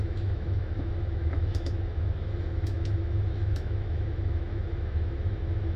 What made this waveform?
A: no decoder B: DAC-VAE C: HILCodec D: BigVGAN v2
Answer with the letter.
B